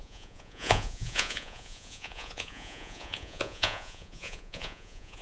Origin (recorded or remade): remade